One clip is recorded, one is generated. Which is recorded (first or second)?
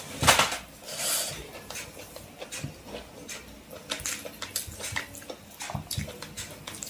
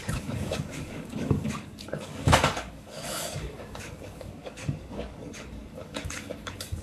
first